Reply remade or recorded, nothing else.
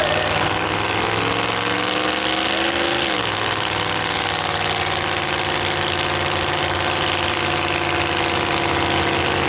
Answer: recorded